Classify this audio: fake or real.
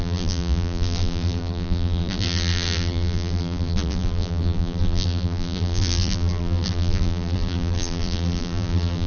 fake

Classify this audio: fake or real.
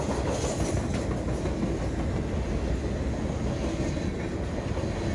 real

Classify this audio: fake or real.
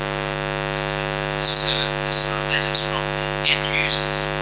real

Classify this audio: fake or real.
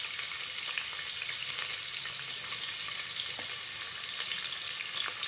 real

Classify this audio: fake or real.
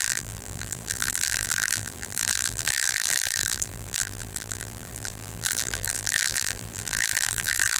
fake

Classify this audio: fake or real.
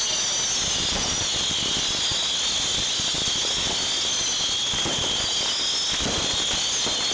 real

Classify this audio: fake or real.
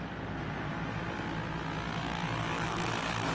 real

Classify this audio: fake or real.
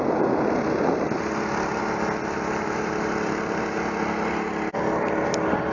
real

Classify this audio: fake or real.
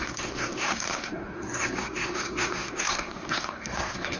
fake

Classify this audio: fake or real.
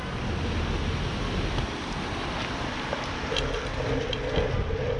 real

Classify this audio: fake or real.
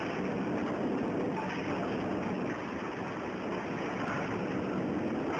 real